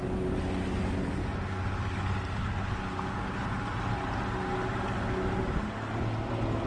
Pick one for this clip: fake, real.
real